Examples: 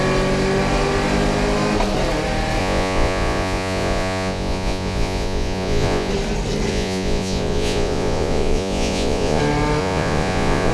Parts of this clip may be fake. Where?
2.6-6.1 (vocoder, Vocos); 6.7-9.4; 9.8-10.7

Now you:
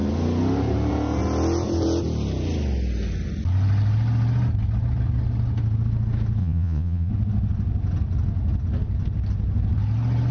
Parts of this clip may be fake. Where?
6.4-7.1 (vocoder, Vocos)

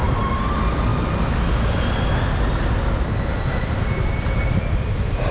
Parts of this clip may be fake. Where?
none